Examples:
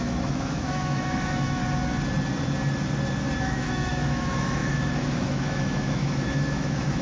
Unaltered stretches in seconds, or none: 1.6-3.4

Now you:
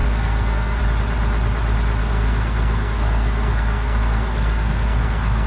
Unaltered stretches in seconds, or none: 0.8-2.0

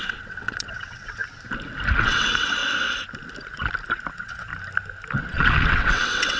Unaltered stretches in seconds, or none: 1.2-2.0; 2.6-4.1; 4.5-5.3

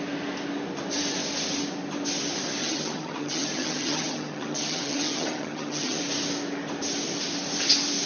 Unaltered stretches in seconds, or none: 0.0-2.6; 6.0-8.1

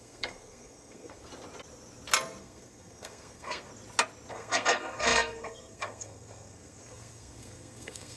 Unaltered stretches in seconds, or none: 1.3-2.4; 3.7-4.3

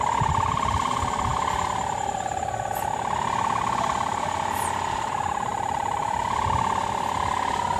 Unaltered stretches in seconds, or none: 0.0-7.8